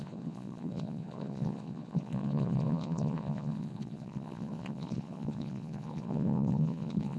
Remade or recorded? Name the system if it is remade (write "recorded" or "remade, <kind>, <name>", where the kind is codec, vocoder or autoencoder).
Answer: remade, vocoder, Vocos